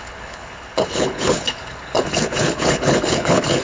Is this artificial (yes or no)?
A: yes